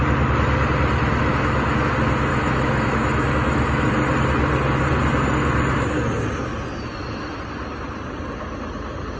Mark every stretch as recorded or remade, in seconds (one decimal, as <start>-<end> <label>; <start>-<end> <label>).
0.0-1.3 recorded; 1.3-1.9 remade; 1.9-2.3 recorded; 2.3-3.9 remade; 3.9-9.2 recorded